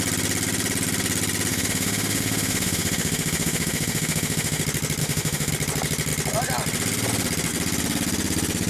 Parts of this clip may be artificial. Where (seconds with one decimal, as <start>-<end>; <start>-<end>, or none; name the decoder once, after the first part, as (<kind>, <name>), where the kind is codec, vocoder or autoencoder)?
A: 1.5-4.6 (autoencoder, DAC-VAE); 5.0-5.5